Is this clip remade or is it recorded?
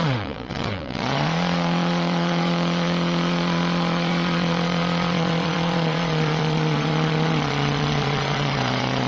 remade